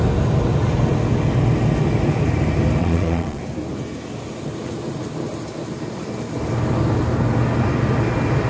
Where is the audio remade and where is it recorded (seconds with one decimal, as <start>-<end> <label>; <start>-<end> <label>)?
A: 0.0-2.8 recorded; 2.8-3.4 remade; 3.4-8.5 recorded

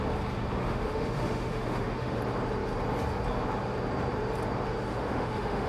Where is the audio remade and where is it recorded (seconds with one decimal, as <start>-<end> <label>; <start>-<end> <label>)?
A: 0.0-0.6 recorded; 0.6-2.2 remade; 2.2-4.9 recorded; 4.9-5.7 remade

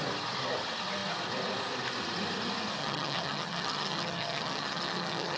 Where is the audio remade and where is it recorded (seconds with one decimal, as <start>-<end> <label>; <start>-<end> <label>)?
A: 0.0-2.8 recorded; 2.8-5.4 remade

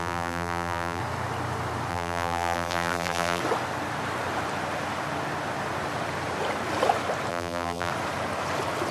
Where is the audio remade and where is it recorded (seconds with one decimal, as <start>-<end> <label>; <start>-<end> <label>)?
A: 0.0-1.0 remade; 1.0-1.9 recorded; 1.9-3.4 remade; 3.4-7.3 recorded; 7.3-7.9 remade; 7.9-8.9 recorded